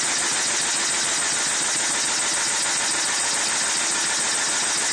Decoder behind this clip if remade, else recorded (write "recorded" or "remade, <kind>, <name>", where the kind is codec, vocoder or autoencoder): recorded